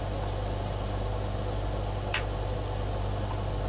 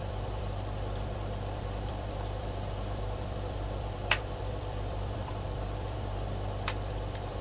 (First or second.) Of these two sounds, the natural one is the first